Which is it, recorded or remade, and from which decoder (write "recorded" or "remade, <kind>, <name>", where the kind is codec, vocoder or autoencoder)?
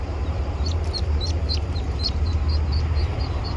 remade, vocoder, BigVGAN v2